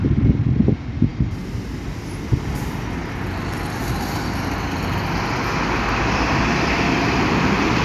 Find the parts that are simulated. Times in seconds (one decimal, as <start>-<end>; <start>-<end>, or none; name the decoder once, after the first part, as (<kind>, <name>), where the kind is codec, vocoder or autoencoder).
none

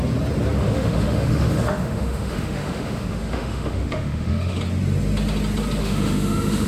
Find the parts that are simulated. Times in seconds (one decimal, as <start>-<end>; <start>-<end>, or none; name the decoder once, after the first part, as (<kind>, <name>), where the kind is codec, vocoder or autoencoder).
0.6-4.6 (autoencoder, DAC-VAE); 5.8-6.7

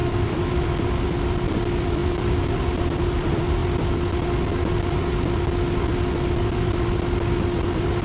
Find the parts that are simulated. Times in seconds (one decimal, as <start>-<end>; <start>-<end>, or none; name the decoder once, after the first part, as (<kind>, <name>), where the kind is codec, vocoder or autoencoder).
0.0-0.5 (autoencoder, DAC-VAE)

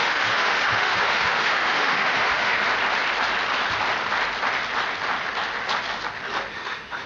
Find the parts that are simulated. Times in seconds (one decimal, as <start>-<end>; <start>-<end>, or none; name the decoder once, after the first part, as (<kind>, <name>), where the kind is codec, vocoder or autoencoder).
0.0-2.6 (autoencoder, DAC-VAE); 6.5-7.1

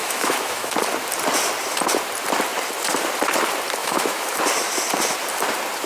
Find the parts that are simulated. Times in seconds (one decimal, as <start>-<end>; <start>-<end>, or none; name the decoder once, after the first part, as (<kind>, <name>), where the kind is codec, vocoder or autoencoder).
0.0-0.7 (autoencoder, DAC-VAE); 3.8-4.4